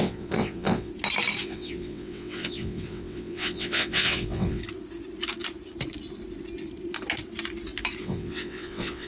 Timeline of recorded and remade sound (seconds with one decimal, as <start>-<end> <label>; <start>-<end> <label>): 0.0-0.9 remade; 0.9-1.4 recorded; 1.4-4.6 remade; 4.6-8.0 recorded; 8.0-9.1 remade